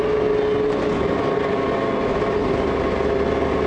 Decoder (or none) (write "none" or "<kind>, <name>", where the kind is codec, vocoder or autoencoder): none